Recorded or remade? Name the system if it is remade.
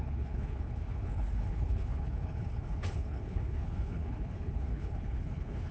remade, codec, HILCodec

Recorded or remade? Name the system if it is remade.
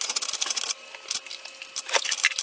recorded